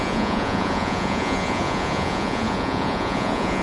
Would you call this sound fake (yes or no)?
yes